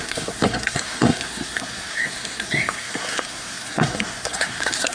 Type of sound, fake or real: fake